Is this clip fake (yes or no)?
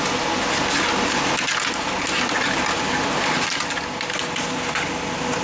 no